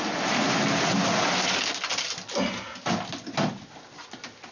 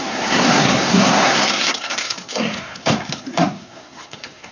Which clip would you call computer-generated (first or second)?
second